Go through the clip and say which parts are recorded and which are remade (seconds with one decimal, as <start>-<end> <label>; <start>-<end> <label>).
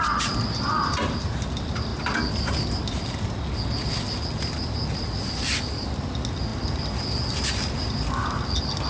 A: 0.0-8.9 recorded